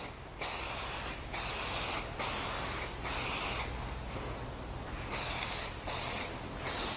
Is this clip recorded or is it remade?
recorded